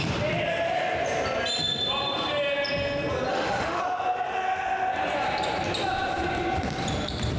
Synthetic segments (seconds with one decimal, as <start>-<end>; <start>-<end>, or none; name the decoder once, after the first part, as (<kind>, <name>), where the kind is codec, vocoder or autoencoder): 3.3-3.8 (autoencoder, DAC-VAE)